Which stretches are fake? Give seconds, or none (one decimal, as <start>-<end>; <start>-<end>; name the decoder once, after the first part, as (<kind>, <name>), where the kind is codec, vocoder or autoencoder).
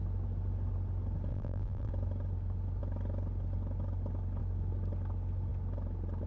1.3-1.9 (vocoder, BigVGAN v2)